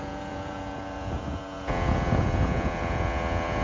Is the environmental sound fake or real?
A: fake